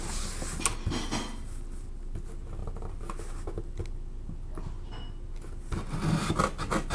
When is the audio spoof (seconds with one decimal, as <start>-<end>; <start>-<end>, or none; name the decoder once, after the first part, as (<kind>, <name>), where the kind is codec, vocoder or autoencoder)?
none